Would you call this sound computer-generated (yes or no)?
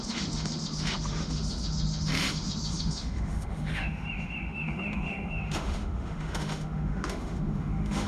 yes